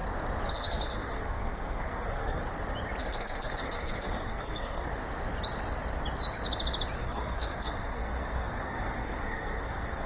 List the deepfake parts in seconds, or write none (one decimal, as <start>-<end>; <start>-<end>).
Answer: 0.5-2.4; 3.0-4.9; 7.0-10.1